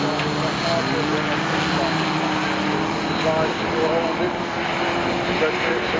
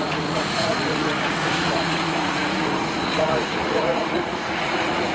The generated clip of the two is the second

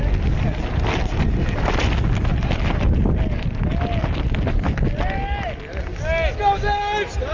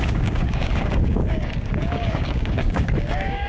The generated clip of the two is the second